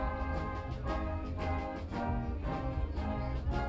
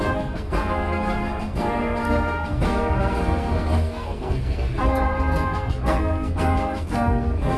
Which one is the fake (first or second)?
second